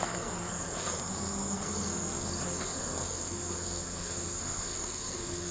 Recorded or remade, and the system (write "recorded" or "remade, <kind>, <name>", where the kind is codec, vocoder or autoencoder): remade, codec, SNAC